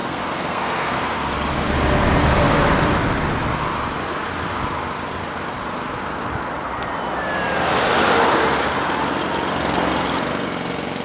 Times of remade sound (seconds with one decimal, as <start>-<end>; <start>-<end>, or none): 0.0-1.3